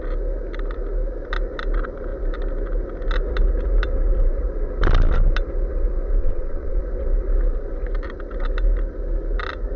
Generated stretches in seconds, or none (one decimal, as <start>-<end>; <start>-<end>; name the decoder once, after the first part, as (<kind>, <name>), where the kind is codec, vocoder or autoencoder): 6.2-6.8 (vocoder, Vocos)